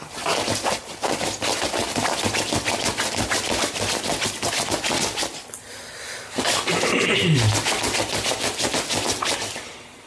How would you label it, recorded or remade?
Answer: recorded